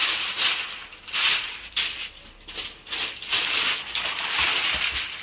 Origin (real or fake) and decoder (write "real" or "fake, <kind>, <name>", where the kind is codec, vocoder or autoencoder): real